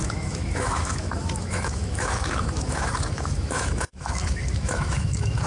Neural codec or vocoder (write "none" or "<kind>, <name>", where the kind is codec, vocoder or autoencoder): autoencoder, DAC-VAE